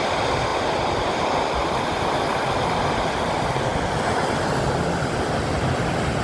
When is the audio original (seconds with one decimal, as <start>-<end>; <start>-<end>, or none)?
0.0-0.5; 1.8-3.7; 4.6-6.2